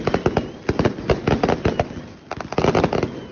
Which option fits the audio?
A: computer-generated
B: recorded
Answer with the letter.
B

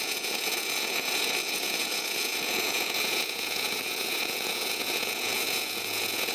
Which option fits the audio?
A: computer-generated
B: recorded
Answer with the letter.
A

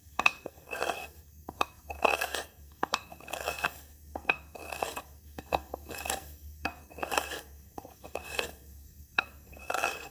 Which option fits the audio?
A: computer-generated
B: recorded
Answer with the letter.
A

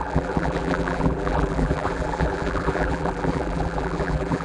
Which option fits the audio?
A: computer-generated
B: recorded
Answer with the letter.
A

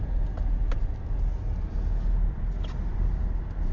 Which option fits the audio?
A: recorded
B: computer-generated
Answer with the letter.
A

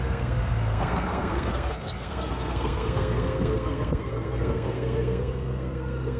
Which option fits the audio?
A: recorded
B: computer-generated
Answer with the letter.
B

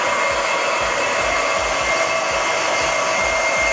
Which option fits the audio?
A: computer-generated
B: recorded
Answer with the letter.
B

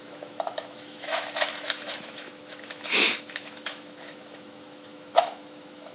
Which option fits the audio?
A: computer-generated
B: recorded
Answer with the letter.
A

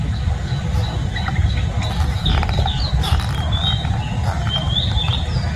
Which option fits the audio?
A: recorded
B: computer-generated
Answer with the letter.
A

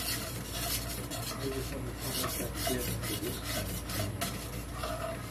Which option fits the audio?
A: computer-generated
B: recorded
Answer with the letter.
B